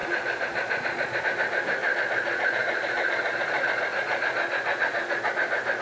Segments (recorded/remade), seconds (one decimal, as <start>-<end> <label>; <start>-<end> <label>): 0.0-1.2 remade; 1.2-1.8 recorded; 1.8-5.3 remade; 5.3-5.8 recorded